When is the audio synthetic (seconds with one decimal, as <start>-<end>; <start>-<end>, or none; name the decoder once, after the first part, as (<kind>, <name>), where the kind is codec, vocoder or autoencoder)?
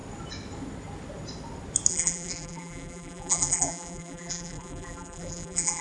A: 1.9-5.8 (vocoder, BigVGAN v2)